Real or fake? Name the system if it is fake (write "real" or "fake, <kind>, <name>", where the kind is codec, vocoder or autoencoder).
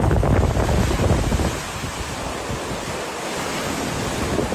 real